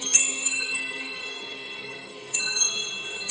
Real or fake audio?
fake